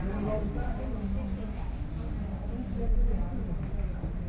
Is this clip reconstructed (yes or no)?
no